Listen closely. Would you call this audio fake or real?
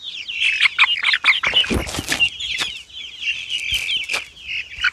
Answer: real